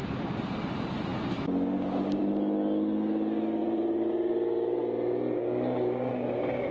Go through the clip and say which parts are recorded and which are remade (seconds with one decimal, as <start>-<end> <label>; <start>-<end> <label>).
0.0-3.6 recorded; 3.6-4.1 remade; 4.1-6.7 recorded